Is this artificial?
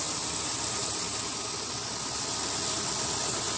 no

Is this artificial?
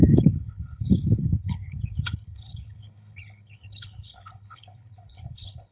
yes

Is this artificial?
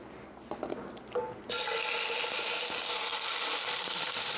no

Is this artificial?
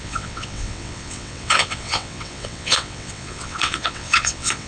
yes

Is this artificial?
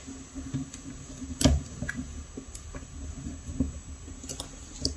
no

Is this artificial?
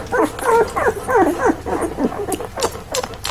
no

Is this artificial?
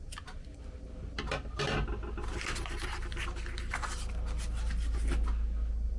no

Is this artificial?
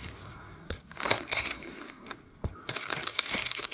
yes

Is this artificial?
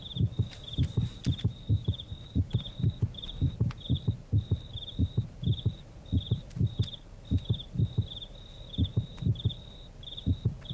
no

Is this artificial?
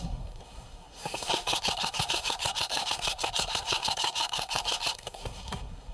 yes